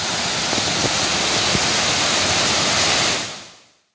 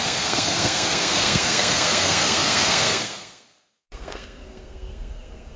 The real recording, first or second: first